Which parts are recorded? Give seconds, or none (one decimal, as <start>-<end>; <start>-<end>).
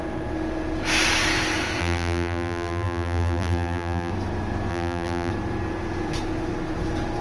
0.0-1.8; 4.1-4.7; 5.3-7.2